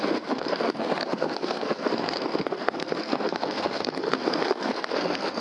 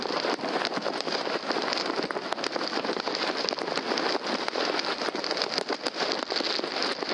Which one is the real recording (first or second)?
second